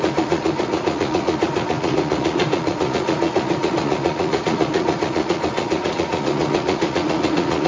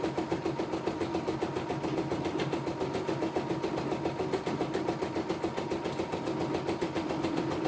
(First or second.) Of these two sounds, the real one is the second